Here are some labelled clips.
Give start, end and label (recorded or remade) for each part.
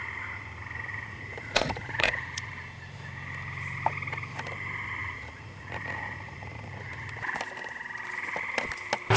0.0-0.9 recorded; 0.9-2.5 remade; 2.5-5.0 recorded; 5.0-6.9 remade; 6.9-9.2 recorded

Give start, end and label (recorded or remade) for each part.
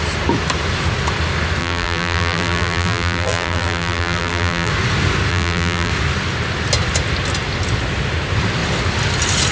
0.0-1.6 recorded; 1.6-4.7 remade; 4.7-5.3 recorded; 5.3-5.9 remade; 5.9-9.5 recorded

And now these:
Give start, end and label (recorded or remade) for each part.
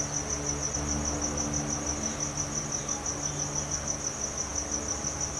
0.0-5.4 recorded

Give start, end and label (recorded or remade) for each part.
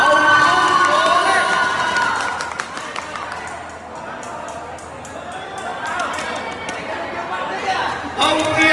0.0-5.7 recorded; 5.7-6.4 remade; 6.4-8.7 recorded